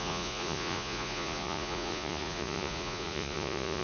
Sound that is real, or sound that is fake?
fake